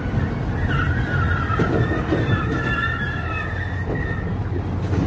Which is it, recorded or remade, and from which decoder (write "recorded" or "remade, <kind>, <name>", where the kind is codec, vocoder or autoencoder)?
recorded